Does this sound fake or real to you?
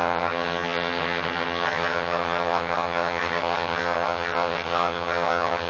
fake